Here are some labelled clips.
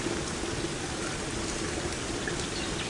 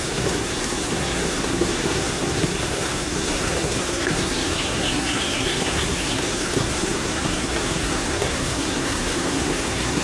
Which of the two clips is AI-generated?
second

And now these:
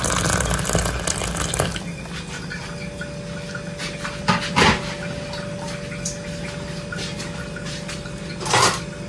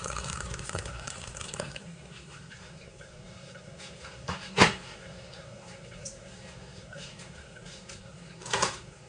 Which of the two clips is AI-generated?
second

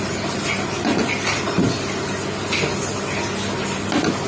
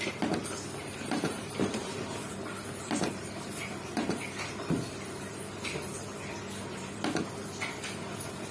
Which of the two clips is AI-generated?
second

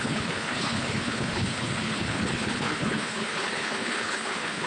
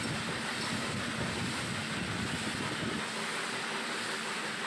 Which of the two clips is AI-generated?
first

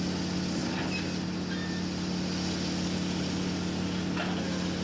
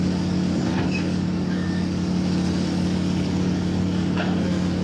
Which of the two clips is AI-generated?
second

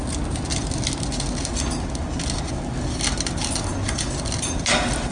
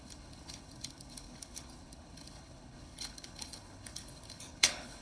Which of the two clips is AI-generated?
second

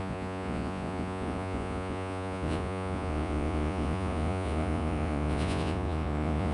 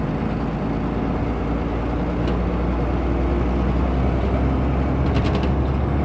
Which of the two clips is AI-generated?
first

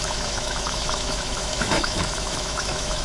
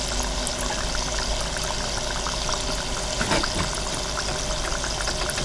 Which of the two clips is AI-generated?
first